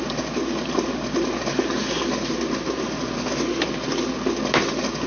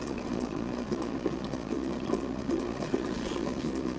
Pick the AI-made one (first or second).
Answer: second